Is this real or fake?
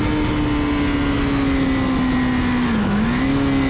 real